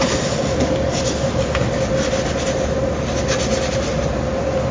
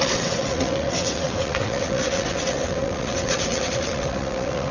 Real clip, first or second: first